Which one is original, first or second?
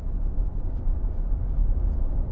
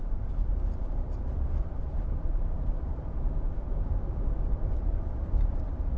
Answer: first